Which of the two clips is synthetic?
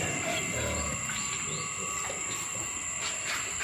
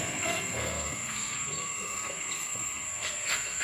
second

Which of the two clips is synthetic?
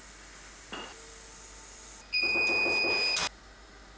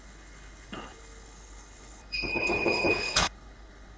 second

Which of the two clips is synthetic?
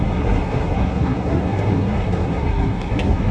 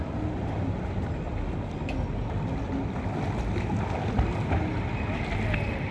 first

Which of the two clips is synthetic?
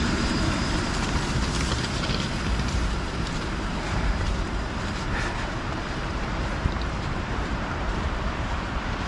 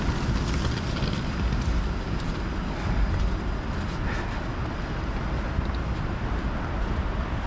first